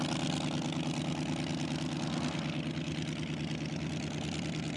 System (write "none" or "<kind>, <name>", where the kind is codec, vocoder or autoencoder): none